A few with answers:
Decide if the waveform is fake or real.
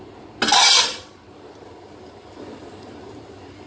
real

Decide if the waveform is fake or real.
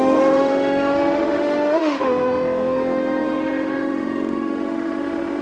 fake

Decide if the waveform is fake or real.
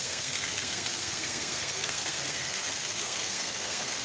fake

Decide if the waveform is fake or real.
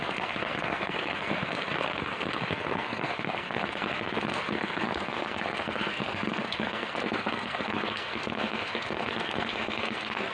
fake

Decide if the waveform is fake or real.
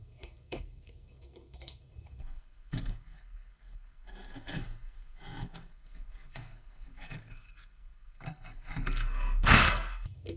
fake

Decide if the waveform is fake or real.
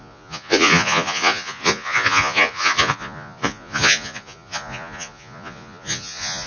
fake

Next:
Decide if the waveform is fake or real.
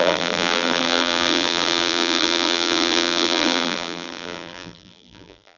fake